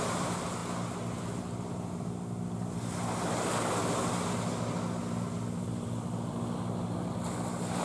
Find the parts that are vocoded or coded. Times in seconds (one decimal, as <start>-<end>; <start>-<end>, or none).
none